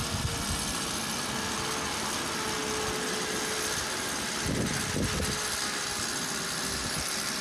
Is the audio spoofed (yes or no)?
no